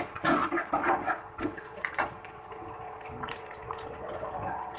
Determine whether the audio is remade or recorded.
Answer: remade